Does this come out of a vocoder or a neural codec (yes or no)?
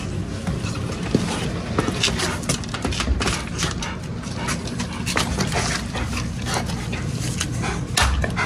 no